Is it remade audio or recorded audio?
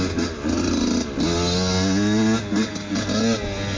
recorded